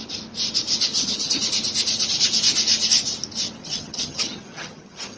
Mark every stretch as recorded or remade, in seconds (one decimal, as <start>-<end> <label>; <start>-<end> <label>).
0.0-0.9 recorded; 0.9-1.4 remade; 1.4-3.6 recorded; 3.6-5.2 remade